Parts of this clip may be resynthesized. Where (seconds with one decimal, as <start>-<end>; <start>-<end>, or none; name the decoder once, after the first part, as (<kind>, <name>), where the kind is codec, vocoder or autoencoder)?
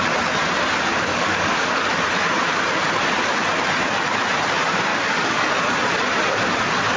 1.1-1.9 (codec, DAC); 4.9-5.5